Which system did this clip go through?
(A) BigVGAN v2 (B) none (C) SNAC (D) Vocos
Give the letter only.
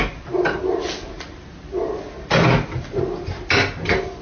B